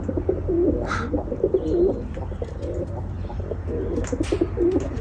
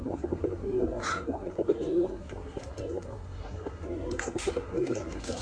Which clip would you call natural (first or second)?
first